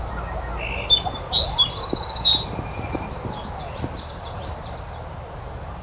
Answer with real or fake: real